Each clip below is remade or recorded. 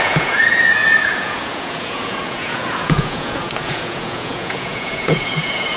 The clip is remade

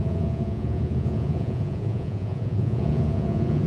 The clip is remade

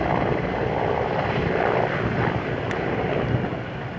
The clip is recorded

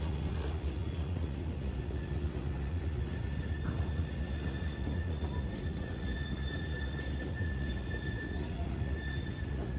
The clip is remade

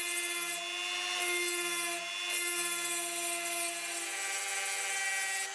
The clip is recorded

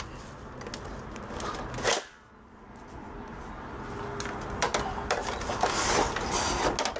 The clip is recorded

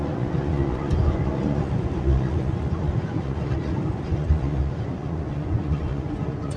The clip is remade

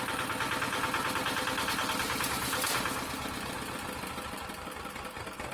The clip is recorded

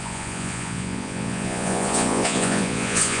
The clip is remade